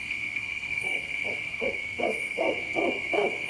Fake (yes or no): yes